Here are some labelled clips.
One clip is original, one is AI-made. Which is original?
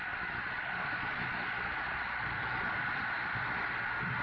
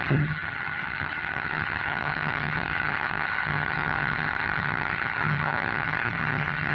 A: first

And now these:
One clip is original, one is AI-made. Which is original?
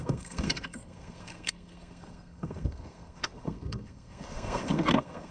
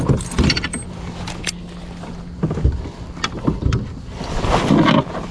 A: second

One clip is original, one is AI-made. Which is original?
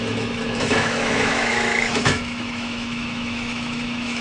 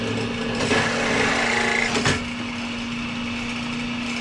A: second